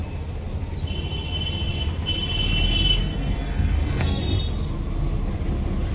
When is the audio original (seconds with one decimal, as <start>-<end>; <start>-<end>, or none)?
0.0-3.0; 4.2-5.9